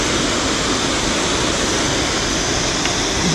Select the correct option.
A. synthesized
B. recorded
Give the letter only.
B